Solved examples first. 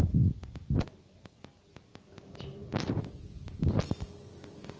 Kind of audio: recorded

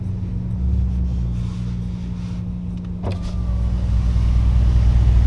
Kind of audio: recorded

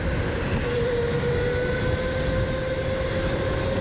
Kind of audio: recorded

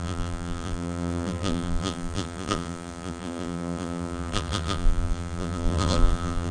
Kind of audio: remade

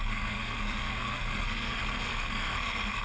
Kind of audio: remade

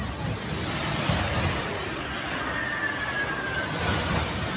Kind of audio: recorded